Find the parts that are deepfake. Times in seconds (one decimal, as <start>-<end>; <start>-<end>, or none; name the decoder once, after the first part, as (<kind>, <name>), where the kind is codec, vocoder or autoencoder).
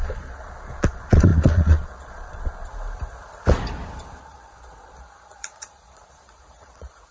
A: 0.0-2.7 (vocoder, Vocos); 4.2-7.1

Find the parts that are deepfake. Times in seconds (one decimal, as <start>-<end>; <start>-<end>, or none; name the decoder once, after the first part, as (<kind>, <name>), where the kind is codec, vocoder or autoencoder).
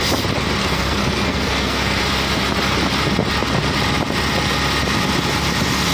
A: 0.6-2.0 (codec, SNAC)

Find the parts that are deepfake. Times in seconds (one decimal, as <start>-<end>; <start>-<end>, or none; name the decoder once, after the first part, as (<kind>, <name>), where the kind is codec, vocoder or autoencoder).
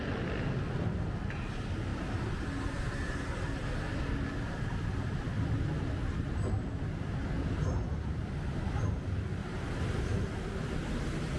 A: 9.4-10.0 (vocoder, BigVGAN v2)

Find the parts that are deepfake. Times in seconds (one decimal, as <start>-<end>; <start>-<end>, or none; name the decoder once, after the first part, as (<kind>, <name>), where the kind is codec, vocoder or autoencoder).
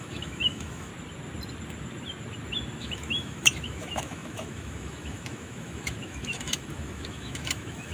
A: 0.0-0.9 (autoencoder, DAC-VAE); 2.8-7.9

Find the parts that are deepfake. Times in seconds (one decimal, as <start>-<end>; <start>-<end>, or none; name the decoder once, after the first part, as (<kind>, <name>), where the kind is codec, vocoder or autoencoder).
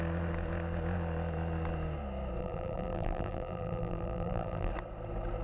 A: 2.4-4.7 (vocoder, BigVGAN v2)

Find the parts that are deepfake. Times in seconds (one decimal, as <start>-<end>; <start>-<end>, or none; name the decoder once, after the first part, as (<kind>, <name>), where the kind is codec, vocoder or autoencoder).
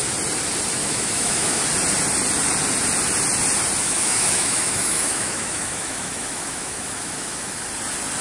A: 0.8-1.6 (autoencoder, DAC-VAE); 3.8-7.6